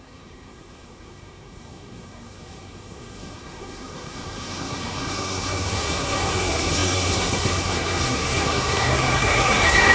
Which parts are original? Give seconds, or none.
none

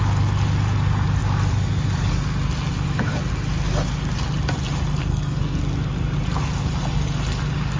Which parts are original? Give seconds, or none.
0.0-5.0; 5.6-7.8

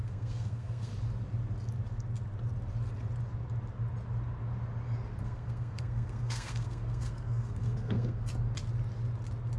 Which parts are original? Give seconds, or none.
0.9-5.2; 8.3-9.6